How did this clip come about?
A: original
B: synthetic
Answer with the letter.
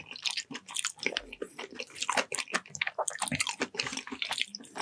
A